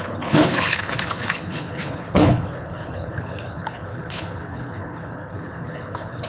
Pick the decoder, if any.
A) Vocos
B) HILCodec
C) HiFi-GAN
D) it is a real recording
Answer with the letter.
B